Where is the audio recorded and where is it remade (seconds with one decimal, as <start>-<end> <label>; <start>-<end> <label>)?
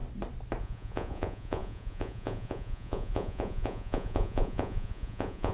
0.0-0.6 recorded; 0.6-5.5 remade